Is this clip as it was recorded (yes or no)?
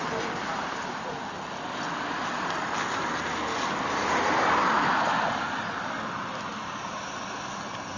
yes